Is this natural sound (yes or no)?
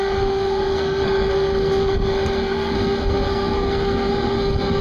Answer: no